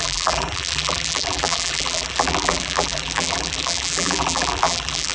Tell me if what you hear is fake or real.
fake